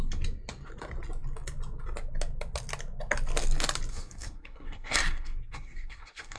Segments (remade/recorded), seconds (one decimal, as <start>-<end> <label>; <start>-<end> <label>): 0.0-3.9 recorded; 3.9-6.4 remade